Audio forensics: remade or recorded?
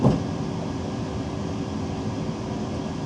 recorded